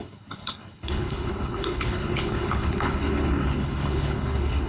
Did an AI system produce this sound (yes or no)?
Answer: yes